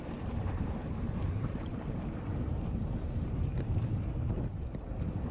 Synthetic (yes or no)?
yes